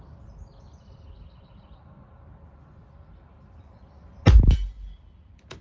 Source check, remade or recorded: recorded